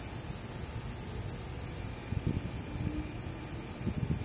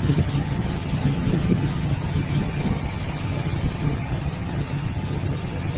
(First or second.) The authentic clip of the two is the first